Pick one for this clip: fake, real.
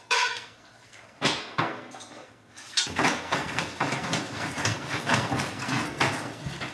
fake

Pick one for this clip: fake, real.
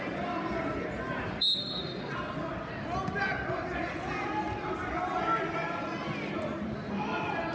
real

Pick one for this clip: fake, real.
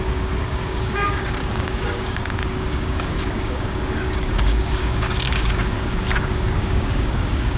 fake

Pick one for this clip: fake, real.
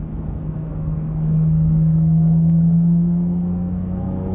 fake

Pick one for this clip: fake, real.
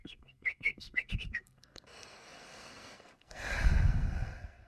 fake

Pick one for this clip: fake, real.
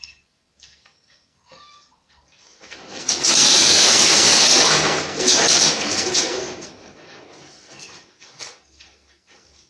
fake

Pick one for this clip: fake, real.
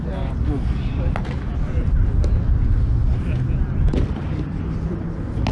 real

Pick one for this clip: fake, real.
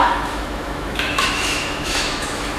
fake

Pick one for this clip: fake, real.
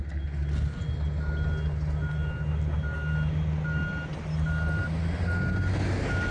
real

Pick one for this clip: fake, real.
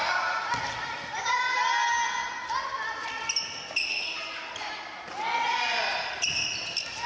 real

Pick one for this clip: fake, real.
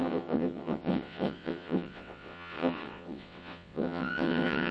fake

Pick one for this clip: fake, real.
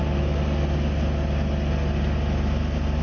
real